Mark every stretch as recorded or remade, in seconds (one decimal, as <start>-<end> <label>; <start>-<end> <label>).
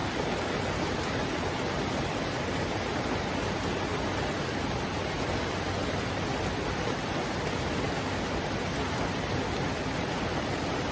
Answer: 0.0-10.9 recorded